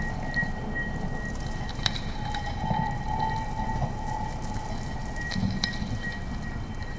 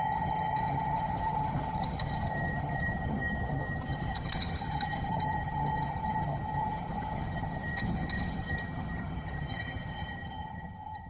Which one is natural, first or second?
first